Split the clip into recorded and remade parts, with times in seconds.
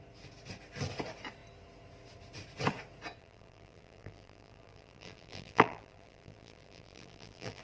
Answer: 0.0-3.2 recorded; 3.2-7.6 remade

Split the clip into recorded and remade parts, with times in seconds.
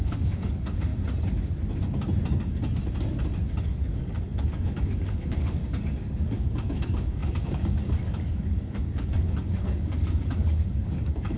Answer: 0.0-0.9 remade; 0.9-3.6 recorded; 3.6-5.6 remade; 5.6-6.1 recorded; 6.1-11.4 remade